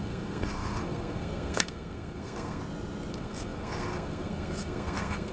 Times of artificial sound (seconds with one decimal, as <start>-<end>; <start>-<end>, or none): 0.0-2.6; 3.1-5.3